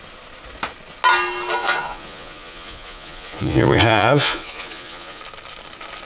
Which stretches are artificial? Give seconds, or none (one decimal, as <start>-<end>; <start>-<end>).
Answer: 1.6-5.2